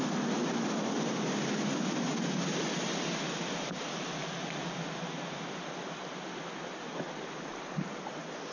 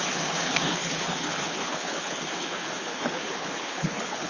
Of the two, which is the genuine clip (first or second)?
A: first